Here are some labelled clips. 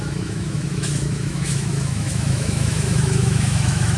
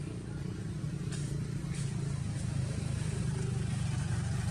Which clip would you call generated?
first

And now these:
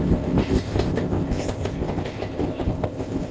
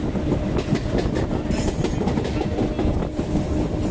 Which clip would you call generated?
first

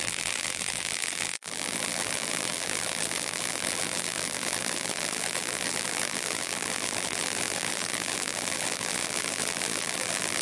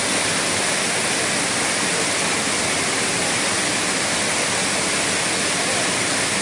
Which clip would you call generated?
first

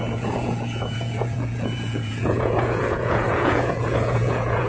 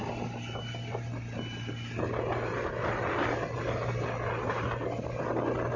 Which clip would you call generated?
first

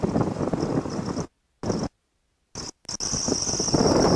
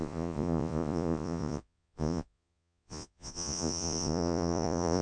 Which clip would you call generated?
second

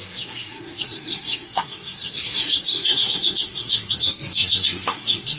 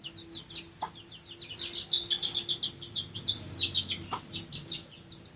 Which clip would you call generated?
first